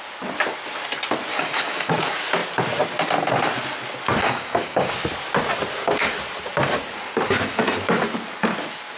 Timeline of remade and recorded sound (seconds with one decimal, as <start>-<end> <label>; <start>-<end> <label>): 0.0-1.3 recorded; 1.3-1.9 remade; 1.9-4.2 recorded; 4.2-4.9 remade; 4.9-9.0 recorded